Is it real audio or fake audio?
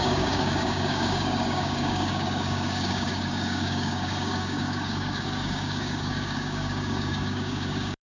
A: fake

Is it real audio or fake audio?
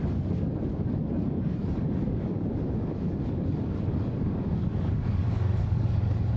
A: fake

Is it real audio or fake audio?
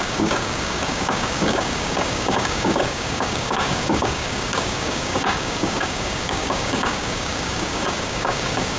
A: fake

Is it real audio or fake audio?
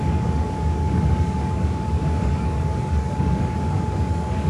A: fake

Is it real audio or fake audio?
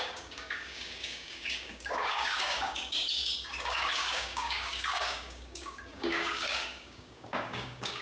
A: fake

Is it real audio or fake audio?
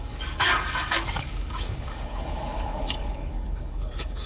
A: fake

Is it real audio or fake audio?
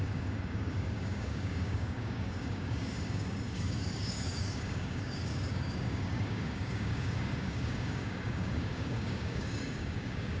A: fake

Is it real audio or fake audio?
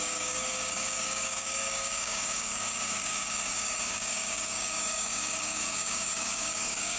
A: fake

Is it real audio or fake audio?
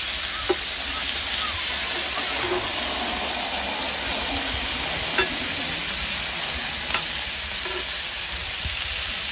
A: real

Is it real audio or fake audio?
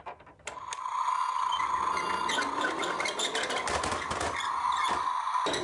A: real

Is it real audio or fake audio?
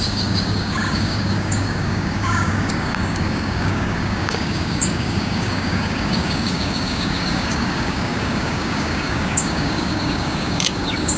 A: fake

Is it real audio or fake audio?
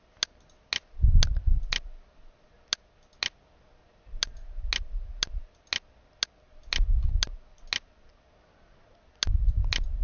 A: real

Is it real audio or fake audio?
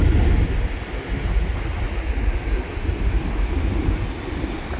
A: real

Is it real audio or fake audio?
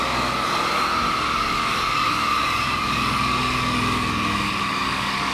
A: fake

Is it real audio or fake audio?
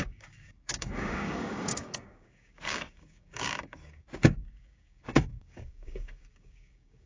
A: fake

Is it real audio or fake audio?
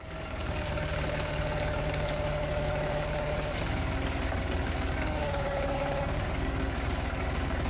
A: fake